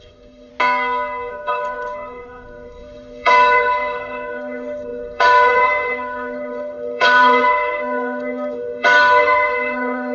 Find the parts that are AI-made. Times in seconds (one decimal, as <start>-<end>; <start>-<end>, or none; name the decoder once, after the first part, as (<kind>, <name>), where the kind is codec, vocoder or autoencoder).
0.0-0.5 (codec, SNAC); 1.3-10.1